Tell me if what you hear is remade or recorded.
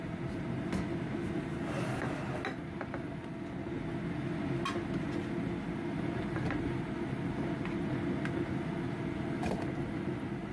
recorded